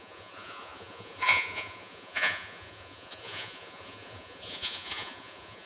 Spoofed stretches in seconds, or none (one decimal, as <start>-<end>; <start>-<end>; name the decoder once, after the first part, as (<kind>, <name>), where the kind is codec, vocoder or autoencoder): 0.0-5.7 (vocoder, Vocos)